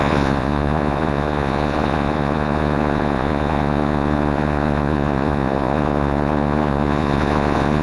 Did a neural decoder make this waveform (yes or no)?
yes